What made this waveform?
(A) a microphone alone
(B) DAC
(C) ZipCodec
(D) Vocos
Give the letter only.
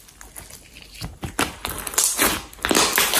A